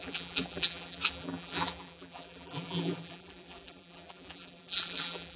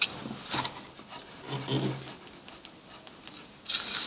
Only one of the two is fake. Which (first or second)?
first